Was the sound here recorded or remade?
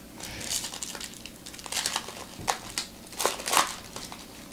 recorded